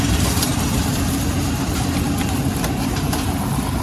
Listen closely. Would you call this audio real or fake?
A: fake